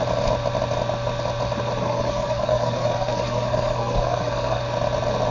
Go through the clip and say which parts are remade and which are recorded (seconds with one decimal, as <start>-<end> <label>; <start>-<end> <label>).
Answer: 0.0-1.8 recorded; 1.8-4.6 remade; 4.6-5.3 recorded